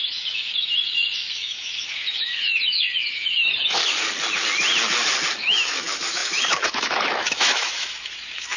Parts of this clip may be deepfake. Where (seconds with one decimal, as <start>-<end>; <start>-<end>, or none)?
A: 0.0-3.8; 5.4-8.6